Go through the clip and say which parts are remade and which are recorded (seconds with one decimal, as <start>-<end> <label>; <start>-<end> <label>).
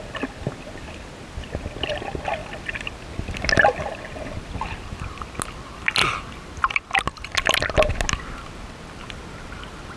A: 0.0-10.0 recorded